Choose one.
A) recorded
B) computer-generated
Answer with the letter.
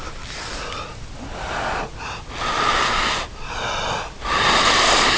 A